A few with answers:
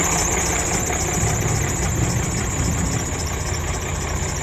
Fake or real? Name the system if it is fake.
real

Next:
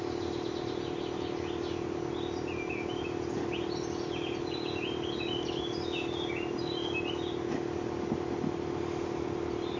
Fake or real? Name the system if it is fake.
real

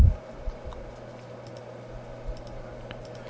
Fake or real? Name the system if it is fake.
real